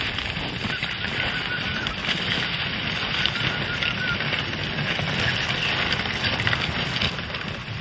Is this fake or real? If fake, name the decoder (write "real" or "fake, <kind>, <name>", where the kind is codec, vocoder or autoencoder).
real